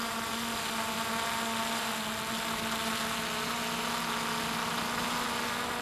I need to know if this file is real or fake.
real